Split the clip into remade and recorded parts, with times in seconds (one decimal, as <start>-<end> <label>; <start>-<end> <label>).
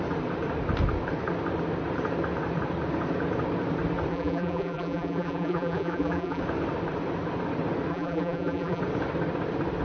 0.0-4.1 recorded; 4.1-6.4 remade; 6.4-7.9 recorded; 7.9-8.8 remade; 8.8-9.8 recorded